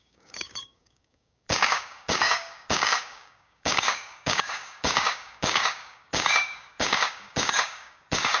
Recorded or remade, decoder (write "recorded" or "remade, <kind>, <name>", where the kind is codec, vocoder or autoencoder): remade, codec, DAC